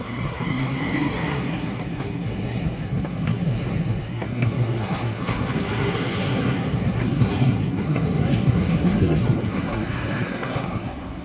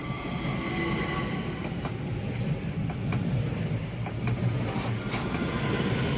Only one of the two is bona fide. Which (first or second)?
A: second